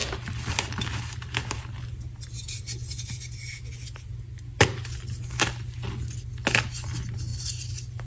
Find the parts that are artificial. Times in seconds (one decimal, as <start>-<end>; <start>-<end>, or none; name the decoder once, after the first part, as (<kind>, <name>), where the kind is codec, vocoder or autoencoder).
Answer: none